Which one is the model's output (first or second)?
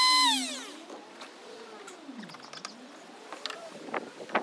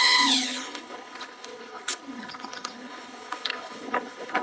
second